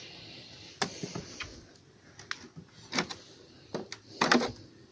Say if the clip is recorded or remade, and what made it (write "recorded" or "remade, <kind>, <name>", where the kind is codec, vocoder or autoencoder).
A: recorded